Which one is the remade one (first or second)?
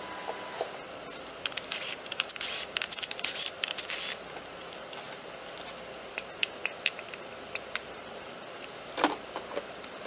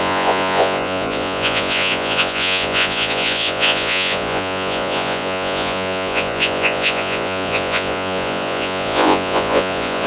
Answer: second